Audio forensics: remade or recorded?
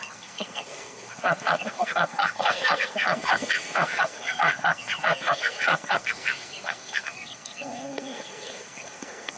remade